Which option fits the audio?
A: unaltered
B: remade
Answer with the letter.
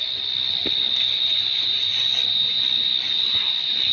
A